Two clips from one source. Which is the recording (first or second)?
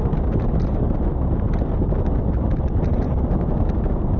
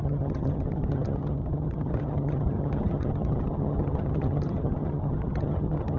first